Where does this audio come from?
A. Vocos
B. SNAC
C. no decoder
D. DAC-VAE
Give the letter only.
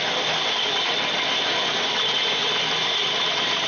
C